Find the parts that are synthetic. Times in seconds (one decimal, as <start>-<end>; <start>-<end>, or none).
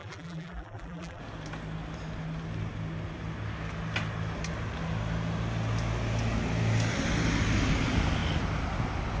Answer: 0.0-1.2